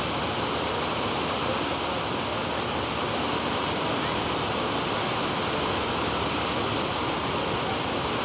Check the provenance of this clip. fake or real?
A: real